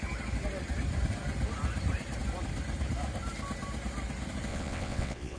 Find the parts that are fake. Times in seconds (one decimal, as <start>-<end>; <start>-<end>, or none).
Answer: 4.5-5.4